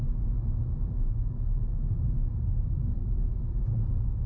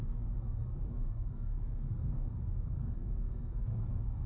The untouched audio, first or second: first